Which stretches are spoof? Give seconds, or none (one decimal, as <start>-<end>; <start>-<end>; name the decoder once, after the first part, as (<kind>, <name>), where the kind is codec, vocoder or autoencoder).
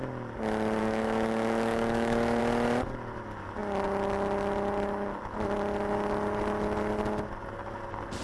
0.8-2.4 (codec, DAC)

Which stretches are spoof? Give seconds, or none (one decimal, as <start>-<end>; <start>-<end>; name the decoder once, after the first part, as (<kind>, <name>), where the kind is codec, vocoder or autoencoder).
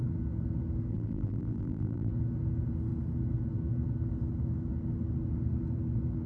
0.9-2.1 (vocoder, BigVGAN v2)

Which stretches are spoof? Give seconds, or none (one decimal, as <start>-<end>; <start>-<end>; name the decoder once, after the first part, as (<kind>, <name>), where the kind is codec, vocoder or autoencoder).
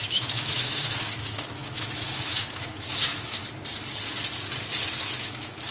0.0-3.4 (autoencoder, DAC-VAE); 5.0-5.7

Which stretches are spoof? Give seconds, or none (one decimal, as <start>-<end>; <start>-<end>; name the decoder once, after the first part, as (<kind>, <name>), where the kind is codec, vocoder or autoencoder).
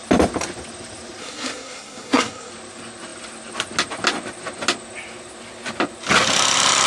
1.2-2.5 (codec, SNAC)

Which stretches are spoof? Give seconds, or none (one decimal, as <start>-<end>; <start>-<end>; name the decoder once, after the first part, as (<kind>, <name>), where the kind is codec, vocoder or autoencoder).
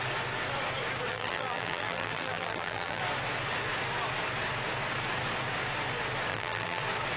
1.1-3.0 (vocoder, BigVGAN v2); 6.3-6.8